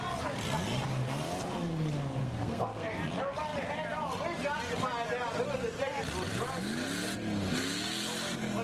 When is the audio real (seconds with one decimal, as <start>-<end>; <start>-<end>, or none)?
0.0-2.2; 2.9-8.6